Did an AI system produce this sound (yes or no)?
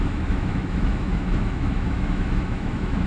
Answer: yes